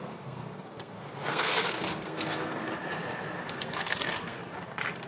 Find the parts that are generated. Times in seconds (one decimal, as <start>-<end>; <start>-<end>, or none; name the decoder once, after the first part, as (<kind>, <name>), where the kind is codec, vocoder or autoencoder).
0.0-2.6 (codec, SNAC); 3.5-4.4